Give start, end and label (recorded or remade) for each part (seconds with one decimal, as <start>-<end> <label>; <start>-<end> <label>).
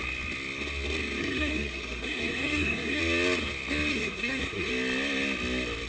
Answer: 0.0-1.2 recorded; 1.2-3.0 remade; 3.0-3.9 recorded; 3.9-4.7 remade; 4.7-5.9 recorded